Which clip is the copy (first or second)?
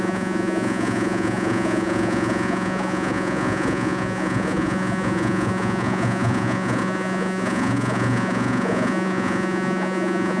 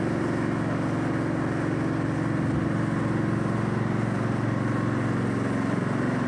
first